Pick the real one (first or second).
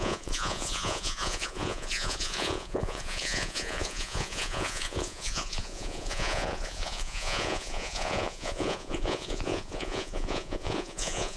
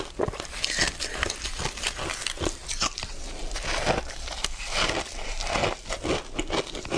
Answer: second